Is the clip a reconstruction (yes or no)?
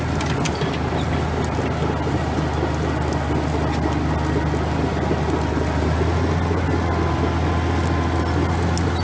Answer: no